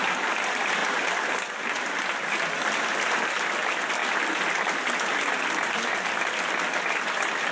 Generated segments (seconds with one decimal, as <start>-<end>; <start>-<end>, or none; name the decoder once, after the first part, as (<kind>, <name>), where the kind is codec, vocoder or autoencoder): none